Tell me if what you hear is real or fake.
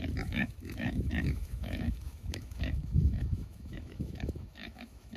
fake